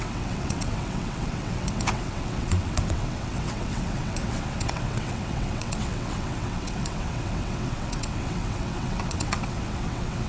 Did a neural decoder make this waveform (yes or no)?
yes